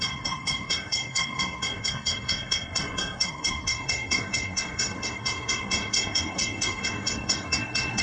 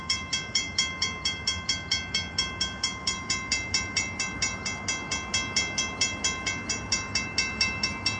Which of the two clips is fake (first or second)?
first